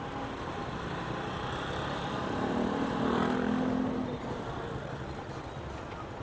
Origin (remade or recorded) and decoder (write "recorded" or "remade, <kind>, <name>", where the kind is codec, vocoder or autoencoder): recorded